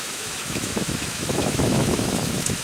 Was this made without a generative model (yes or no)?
no